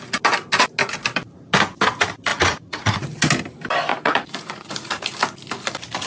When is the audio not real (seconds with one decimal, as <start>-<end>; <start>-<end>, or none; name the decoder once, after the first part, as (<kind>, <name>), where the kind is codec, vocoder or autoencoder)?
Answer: 2.3-3.2 (vocoder, Vocos); 3.9-5.0

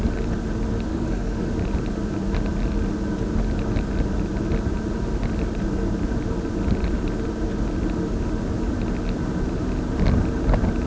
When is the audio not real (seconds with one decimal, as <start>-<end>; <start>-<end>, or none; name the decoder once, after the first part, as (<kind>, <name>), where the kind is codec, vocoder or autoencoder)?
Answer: 0.9-1.5 (codec, DAC)